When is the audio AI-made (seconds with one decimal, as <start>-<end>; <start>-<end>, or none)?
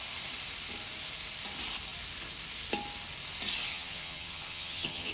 3.7-5.1